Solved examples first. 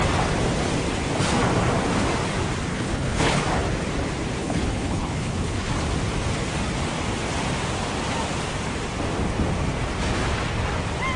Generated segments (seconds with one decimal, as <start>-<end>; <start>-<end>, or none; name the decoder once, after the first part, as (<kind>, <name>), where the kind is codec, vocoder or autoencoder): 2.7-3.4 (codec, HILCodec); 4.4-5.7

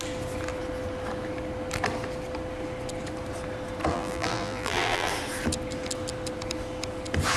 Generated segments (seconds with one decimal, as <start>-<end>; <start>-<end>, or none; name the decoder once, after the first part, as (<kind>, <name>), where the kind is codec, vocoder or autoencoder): 3.9-5.1 (vocoder, BigVGAN v2)

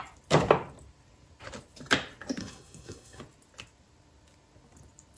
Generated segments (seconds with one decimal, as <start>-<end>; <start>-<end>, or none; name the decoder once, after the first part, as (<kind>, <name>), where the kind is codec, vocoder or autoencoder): 2.4-3.2 (codec, SNAC)

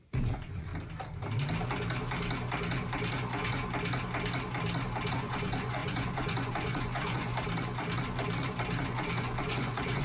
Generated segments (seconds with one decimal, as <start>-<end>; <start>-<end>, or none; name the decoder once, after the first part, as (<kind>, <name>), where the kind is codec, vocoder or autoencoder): 0.0-0.7 (vocoder, Vocos); 5.1-7.3; 8.9-10.0

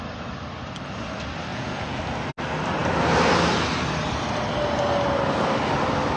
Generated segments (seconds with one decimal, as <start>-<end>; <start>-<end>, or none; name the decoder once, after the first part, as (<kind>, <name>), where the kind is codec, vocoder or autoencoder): 1.5-2.0 (vocoder, Vocos)

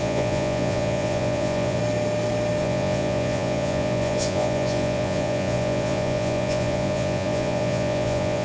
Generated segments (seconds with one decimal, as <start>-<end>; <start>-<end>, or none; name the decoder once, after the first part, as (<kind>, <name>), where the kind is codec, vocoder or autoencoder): 0.0-1.8 (vocoder, Vocos); 2.6-8.4

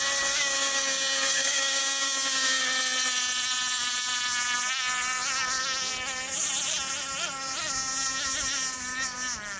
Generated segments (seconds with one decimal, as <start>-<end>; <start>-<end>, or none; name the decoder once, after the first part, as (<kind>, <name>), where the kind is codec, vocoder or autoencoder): 0.4-2.6 (codec, DAC)

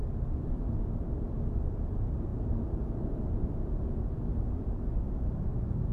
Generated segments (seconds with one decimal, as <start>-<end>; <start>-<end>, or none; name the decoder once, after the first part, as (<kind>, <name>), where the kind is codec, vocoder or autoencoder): 1.0-1.9 (vocoder, BigVGAN v2); 2.3-5.5